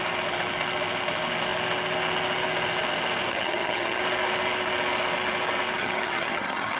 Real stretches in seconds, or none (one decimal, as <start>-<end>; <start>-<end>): 0.0-3.3; 4.0-5.8